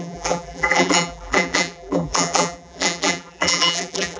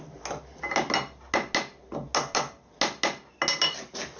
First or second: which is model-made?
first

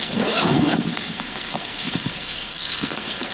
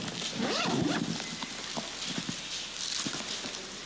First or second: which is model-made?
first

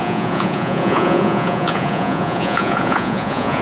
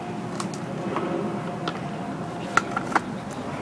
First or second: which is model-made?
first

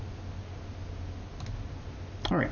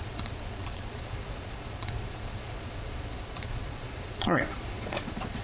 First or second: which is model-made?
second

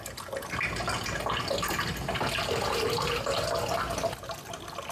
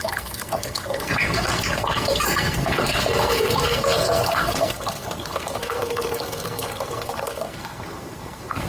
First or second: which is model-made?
second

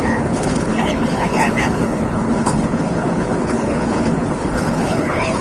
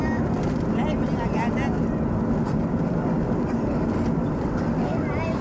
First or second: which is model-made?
first